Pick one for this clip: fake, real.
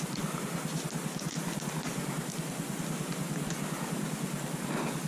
real